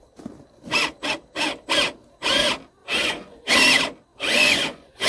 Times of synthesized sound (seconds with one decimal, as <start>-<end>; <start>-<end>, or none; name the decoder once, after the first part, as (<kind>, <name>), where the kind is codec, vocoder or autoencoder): 2.8-3.5 (vocoder, Vocos); 4.1-5.1